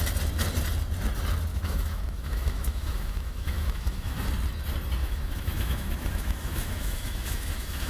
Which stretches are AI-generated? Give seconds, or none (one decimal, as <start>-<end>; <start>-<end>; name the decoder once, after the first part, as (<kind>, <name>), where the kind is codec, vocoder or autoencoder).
1.5-4.2 (autoencoder, DAC-VAE); 5.0-7.9